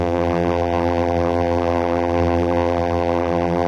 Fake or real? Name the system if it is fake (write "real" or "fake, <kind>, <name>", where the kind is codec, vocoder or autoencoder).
fake, vocoder, BigVGAN v2